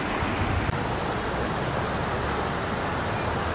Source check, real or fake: real